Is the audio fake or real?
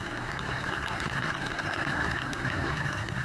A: fake